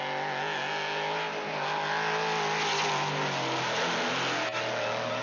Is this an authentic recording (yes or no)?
yes